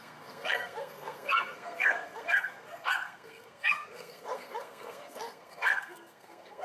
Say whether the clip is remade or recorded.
remade